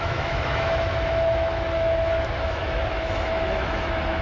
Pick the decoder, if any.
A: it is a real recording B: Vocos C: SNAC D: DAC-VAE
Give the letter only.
D